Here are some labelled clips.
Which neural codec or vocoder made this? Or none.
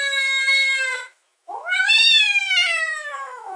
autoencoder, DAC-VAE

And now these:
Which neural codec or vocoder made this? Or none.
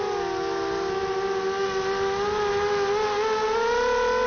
none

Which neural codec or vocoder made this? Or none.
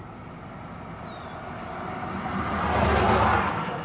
none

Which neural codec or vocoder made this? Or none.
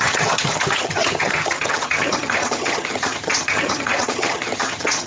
vocoder, HiFi-GAN